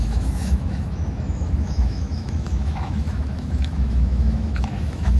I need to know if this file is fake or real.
fake